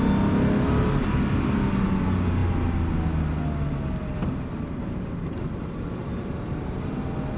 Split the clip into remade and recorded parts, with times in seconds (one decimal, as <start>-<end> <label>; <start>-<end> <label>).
0.0-7.4 recorded